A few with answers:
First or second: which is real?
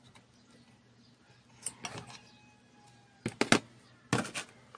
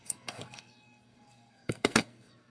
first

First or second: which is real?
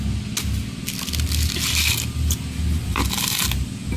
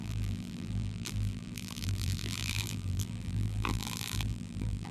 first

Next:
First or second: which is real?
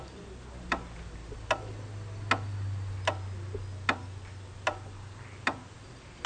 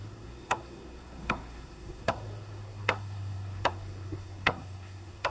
first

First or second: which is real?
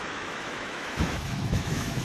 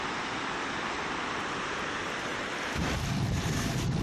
second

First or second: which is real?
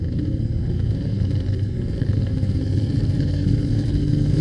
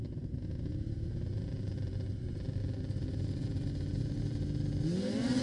second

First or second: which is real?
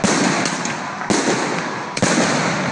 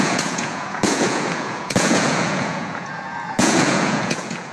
first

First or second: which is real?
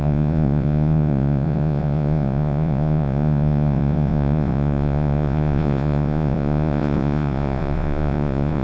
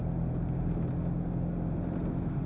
second